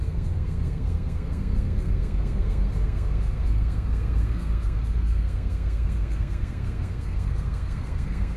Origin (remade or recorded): remade